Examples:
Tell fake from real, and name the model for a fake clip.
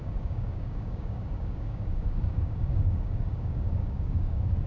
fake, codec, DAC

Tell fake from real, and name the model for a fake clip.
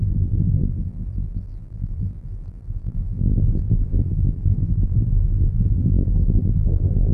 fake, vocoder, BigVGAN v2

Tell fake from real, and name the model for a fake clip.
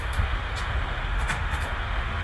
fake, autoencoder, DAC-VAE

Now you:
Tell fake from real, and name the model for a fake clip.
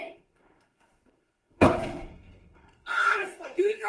fake, codec, SNAC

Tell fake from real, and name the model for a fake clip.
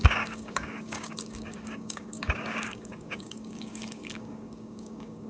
fake, codec, DAC